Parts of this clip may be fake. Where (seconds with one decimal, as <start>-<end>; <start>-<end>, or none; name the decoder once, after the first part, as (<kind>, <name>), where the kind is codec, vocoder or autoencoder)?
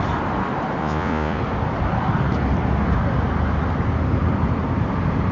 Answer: 0.8-1.4 (vocoder, Vocos)